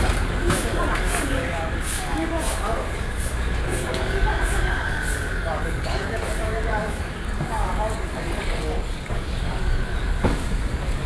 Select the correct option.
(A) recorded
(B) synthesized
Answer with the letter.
B